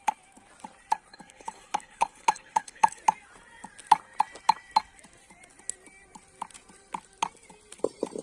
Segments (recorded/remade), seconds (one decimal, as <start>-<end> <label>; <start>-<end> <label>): 0.0-1.1 recorded; 1.1-3.0 remade; 3.0-8.2 recorded